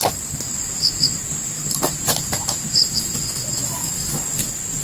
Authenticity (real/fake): real